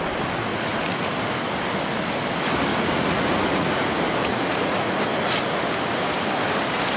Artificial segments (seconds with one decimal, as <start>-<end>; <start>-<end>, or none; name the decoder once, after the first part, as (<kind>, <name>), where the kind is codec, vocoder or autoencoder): 0.5-1.1 (vocoder, Vocos); 2.7-3.7; 4.2-5.0